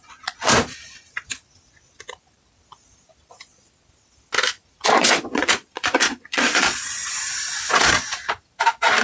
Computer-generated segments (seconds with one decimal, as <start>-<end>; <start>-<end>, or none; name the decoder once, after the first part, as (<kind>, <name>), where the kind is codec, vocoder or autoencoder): 0.0-0.5 (vocoder, Vocos); 4.9-7.0